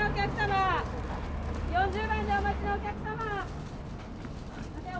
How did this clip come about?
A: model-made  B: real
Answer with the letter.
B